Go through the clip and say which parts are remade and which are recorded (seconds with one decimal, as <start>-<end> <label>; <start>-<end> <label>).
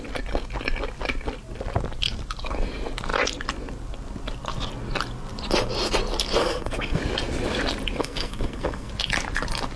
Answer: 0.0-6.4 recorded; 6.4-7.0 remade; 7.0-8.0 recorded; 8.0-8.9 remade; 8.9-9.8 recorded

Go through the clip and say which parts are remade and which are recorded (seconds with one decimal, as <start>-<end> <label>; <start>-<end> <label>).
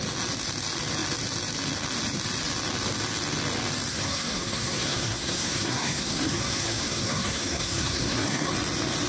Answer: 0.0-3.9 recorded; 3.9-8.5 remade; 8.5-9.1 recorded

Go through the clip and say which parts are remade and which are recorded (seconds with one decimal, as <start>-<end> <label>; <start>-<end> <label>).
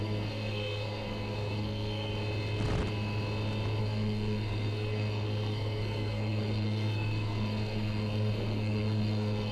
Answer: 0.0-2.1 remade; 2.1-3.8 recorded; 3.8-9.5 remade